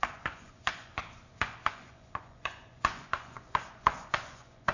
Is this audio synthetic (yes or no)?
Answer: yes